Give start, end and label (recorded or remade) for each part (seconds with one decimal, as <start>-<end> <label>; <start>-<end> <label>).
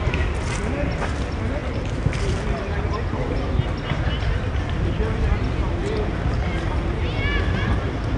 0.0-8.2 recorded